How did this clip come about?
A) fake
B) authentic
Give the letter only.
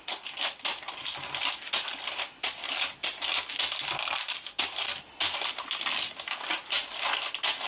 B